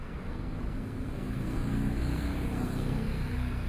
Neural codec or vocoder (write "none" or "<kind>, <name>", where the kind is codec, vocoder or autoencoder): codec, SNAC